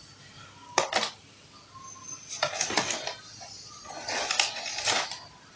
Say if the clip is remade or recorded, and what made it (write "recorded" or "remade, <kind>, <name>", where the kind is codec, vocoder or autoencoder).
recorded